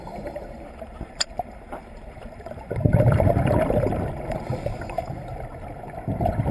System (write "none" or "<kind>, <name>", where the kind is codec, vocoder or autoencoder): vocoder, BigVGAN v2